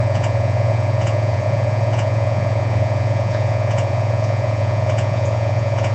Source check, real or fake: fake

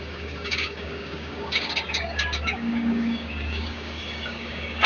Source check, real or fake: fake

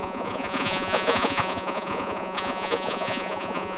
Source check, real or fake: fake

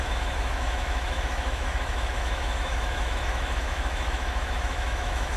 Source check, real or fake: fake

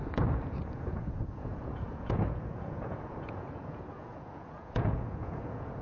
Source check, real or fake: fake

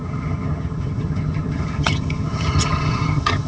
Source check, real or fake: fake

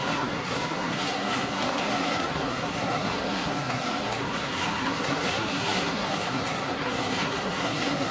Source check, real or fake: fake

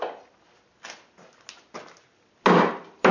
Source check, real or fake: real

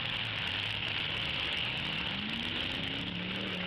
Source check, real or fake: real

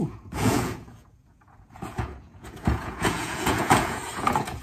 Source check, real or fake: fake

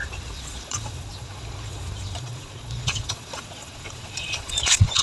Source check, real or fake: fake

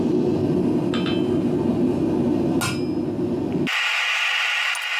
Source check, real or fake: real